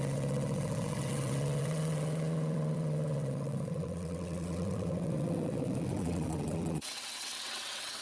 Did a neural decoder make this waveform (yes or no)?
yes